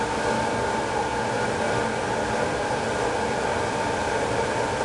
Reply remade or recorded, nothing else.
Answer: recorded